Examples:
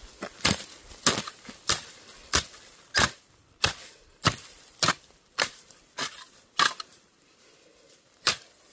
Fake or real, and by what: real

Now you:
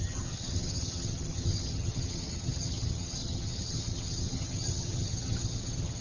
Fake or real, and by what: fake, vocoder, HiFi-GAN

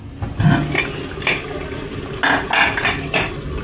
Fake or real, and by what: real